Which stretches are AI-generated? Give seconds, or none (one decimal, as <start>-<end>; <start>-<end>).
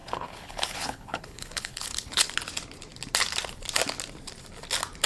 0.0-2.3